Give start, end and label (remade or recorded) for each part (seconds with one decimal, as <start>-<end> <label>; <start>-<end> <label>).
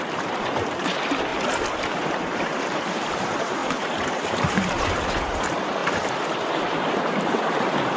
0.0-1.3 remade; 1.3-1.9 recorded; 1.9-8.0 remade